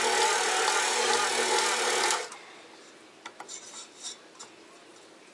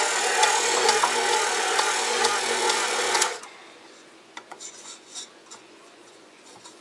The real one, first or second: first